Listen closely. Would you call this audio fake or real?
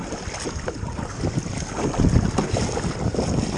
real